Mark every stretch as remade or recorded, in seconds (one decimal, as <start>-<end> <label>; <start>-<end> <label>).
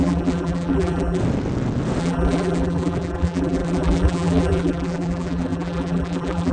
0.0-1.2 remade; 1.2-2.0 recorded; 2.0-6.5 remade